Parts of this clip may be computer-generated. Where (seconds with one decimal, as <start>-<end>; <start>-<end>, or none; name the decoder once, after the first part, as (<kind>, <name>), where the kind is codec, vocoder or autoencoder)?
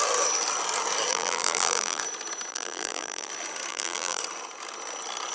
1.1-2.0 (vocoder, BigVGAN v2); 2.5-3.3; 3.7-4.2